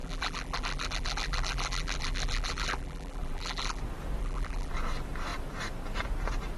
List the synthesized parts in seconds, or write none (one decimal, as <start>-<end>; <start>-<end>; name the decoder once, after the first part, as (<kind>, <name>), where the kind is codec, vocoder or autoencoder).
0.0-3.8 (vocoder, BigVGAN v2); 4.2-4.7